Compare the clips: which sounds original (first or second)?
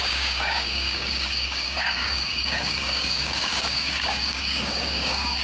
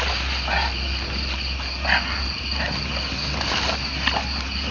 second